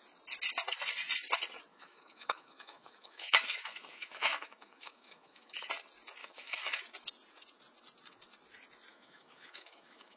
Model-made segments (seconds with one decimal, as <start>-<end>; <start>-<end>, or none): 1.7-5.7; 6.2-6.8; 8.9-10.2